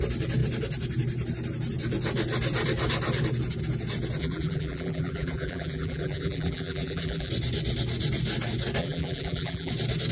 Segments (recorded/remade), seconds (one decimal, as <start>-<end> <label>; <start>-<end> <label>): 0.0-4.2 recorded; 4.2-7.3 remade; 7.3-8.8 recorded; 8.8-9.7 remade; 9.7-10.1 recorded